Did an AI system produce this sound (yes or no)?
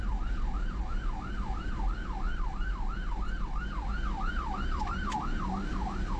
no